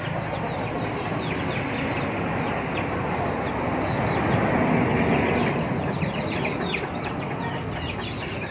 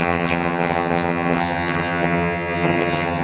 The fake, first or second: second